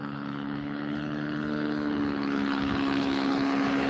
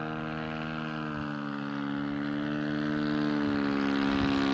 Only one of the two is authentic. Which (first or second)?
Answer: second